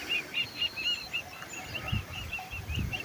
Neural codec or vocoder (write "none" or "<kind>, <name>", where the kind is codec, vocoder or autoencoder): vocoder, BigVGAN v2